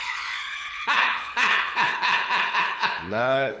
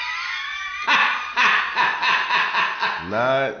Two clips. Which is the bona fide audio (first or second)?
second